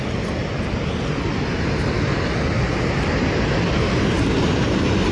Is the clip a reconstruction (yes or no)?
no